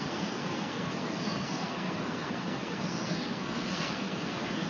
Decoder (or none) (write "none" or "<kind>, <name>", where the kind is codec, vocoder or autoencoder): codec, SNAC